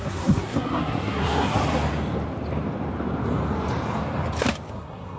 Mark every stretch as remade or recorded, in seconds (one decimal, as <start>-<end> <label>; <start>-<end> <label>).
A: 0.0-1.6 remade; 1.6-4.7 recorded; 4.7-5.2 remade